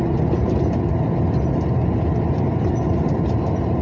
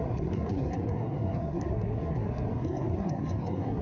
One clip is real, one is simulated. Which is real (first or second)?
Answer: first